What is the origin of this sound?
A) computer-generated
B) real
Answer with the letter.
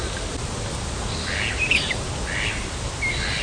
B